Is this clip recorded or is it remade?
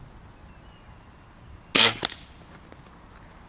recorded